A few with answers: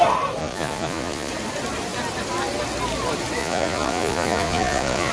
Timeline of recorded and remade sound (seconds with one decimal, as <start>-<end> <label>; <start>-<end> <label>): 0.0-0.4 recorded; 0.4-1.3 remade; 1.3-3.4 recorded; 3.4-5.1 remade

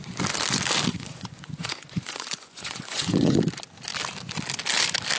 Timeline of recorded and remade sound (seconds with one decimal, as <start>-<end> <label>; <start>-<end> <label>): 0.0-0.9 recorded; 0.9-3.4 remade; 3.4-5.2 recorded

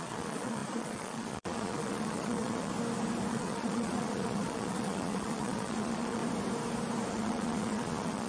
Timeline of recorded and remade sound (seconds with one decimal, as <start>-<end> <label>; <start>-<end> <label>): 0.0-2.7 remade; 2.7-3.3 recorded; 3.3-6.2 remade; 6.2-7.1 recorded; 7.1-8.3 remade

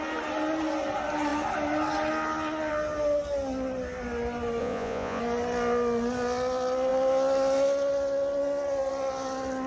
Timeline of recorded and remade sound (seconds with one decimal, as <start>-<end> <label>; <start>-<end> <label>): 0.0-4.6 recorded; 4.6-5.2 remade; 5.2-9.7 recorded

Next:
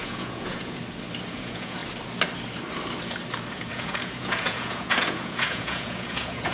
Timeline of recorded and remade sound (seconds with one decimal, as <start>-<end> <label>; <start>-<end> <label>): 0.0-0.8 remade; 0.8-1.3 recorded; 1.3-1.8 remade; 1.8-3.5 recorded; 3.5-6.5 remade

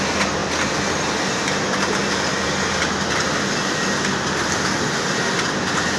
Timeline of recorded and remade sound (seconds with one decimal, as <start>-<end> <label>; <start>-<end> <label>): 0.0-6.0 recorded

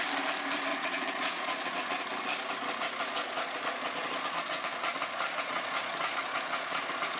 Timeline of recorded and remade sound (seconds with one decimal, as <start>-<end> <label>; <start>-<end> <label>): 0.0-0.7 recorded; 0.7-2.0 remade; 2.0-3.1 recorded; 3.1-6.8 remade; 6.8-7.2 recorded